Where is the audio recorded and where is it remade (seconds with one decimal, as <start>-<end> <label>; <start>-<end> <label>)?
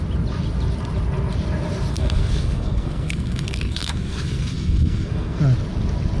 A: 0.0-1.9 recorded; 1.9-5.4 remade; 5.4-6.2 recorded